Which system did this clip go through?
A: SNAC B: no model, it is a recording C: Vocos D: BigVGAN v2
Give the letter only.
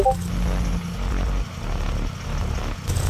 B